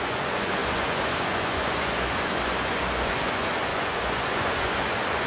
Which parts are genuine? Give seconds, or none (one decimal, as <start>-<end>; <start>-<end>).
none